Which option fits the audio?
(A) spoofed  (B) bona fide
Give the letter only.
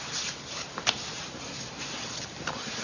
B